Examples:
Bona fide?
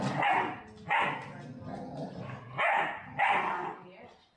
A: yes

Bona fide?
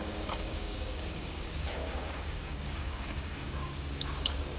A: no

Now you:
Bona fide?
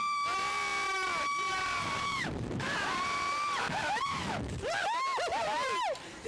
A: no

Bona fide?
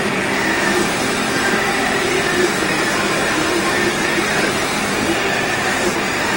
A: no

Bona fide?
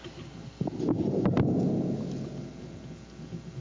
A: yes